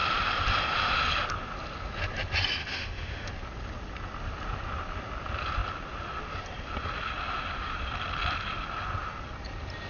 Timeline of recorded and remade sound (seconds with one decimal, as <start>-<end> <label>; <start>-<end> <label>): 0.0-2.6 recorded; 2.6-3.3 remade; 3.3-9.9 recorded